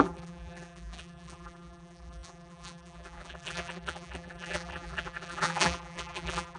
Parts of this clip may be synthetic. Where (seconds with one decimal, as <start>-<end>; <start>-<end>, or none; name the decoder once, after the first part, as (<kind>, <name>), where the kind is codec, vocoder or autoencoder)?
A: 0.0-6.6 (vocoder, BigVGAN v2)